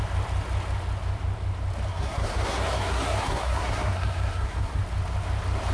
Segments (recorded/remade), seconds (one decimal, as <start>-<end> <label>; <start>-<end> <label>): 0.0-1.9 recorded; 1.9-4.8 remade; 4.8-5.7 recorded